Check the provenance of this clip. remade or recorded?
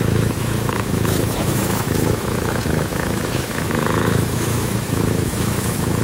remade